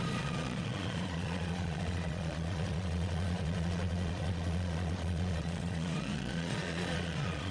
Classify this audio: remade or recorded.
remade